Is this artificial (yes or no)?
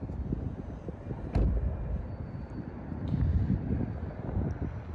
no